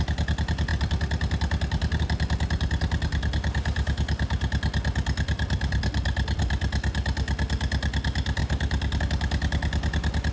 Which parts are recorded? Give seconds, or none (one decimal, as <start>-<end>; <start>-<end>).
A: 0.0-10.3